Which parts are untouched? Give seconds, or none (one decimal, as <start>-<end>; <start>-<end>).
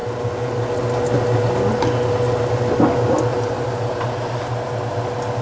0.0-3.3; 4.5-5.4